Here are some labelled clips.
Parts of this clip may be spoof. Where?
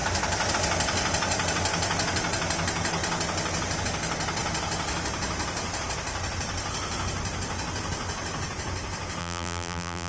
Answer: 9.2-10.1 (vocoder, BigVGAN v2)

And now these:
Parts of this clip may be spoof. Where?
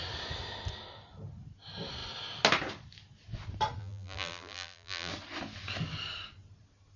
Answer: 3.8-5.1 (vocoder, BigVGAN v2)